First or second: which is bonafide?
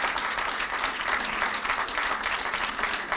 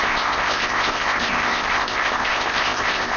first